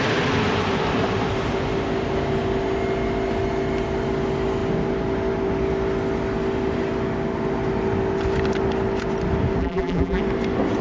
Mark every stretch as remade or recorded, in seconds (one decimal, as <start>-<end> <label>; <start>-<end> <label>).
0.0-9.6 recorded; 9.6-10.2 remade; 10.2-10.8 recorded